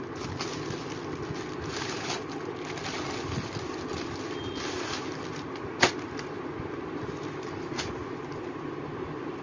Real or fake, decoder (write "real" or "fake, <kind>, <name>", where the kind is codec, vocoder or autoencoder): real